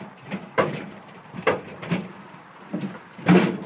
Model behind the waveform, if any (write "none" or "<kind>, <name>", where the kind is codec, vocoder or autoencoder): vocoder, BigVGAN v2